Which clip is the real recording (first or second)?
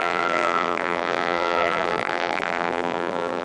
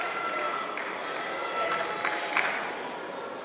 second